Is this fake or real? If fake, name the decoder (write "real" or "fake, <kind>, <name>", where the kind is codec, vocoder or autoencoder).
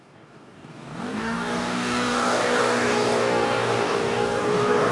fake, codec, DAC